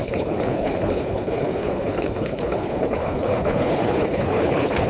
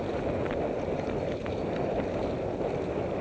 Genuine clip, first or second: second